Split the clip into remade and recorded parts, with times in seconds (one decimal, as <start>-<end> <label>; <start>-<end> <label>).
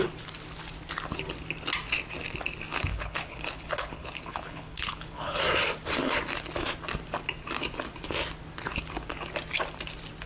0.0-2.7 recorded; 2.7-5.4 remade; 5.4-10.3 recorded